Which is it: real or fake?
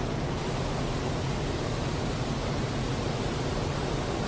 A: real